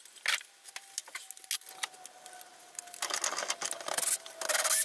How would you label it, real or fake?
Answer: real